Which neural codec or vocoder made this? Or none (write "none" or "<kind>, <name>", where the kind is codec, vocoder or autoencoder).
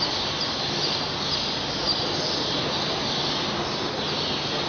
none